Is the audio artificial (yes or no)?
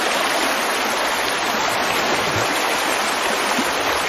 no